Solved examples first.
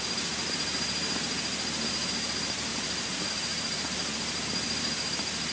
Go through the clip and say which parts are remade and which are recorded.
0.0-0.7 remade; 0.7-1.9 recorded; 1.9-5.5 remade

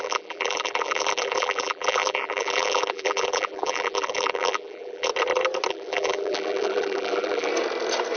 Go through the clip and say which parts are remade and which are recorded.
0.0-5.1 remade; 5.1-5.7 recorded; 5.7-7.5 remade; 7.5-8.2 recorded